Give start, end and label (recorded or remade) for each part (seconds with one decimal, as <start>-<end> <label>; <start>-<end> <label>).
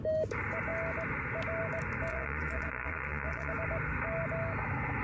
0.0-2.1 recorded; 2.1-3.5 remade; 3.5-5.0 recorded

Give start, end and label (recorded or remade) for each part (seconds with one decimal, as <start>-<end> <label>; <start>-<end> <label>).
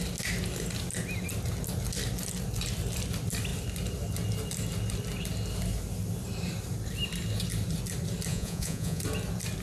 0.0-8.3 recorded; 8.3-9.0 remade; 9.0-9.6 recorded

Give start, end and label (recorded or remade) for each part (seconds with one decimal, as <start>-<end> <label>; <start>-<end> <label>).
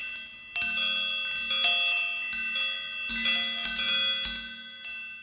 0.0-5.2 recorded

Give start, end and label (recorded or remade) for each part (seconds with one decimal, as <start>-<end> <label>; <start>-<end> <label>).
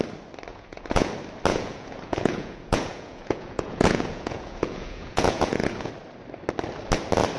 0.0-0.5 recorded; 0.5-1.1 remade; 1.1-1.5 recorded; 1.5-5.9 remade; 5.9-7.4 recorded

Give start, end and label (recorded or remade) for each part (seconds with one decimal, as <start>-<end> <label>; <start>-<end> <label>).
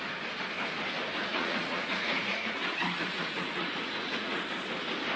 0.0-1.3 recorded; 1.3-4.4 remade; 4.4-5.2 recorded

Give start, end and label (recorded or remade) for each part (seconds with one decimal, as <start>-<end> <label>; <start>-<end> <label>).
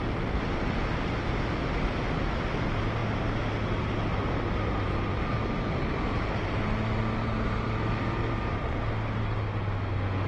0.0-10.3 recorded